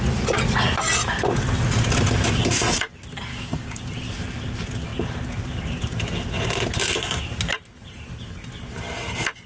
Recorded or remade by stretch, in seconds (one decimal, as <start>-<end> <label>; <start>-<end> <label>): 0.0-3.3 recorded; 3.3-3.8 remade; 3.8-9.5 recorded